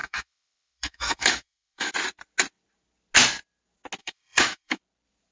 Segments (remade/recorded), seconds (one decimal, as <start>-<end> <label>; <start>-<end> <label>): 0.0-1.9 remade; 1.9-4.0 recorded; 4.0-4.8 remade; 4.8-5.3 recorded